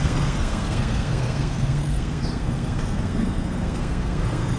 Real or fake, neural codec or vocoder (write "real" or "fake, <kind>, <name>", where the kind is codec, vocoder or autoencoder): fake, codec, SNAC